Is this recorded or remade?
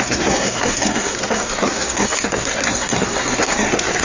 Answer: remade